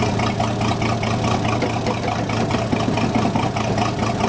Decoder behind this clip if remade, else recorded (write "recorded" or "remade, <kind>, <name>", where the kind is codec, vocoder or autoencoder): recorded